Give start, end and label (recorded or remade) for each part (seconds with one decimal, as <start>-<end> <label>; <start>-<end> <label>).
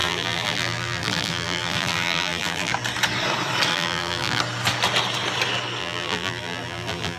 0.0-2.7 remade; 2.7-3.7 recorded; 3.7-4.4 remade; 4.4-5.8 recorded; 5.8-7.2 remade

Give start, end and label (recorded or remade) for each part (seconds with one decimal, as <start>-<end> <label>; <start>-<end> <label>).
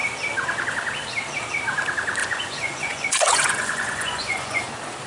0.0-2.2 recorded; 2.2-4.6 remade; 4.6-5.1 recorded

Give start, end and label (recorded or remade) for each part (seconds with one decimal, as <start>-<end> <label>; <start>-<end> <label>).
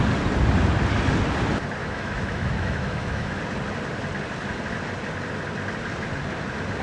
0.0-1.8 recorded; 1.8-3.4 remade; 3.4-6.8 recorded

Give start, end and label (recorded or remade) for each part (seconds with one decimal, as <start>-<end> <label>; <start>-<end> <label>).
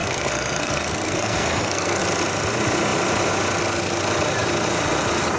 0.0-2.0 remade; 2.0-5.4 recorded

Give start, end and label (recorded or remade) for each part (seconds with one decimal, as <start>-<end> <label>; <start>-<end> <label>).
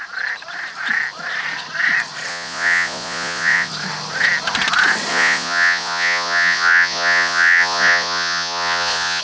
0.0-2.3 recorded; 2.3-3.7 remade; 3.7-5.1 recorded; 5.1-9.2 remade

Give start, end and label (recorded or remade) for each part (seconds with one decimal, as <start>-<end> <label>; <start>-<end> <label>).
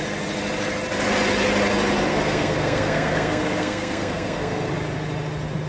0.0-2.1 recorded; 2.1-4.7 remade; 4.7-5.7 recorded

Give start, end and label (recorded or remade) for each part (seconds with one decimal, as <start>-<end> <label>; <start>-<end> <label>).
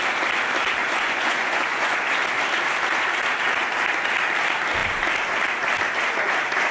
0.0-0.8 recorded; 0.8-2.0 remade; 2.0-6.7 recorded